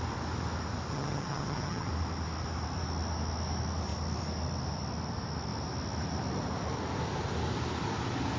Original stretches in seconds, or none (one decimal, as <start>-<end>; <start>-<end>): 0.0-0.9; 1.9-8.4